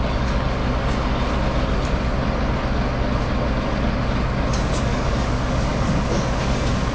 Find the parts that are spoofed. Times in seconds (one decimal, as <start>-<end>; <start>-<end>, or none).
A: 0.0-0.6; 4.7-6.9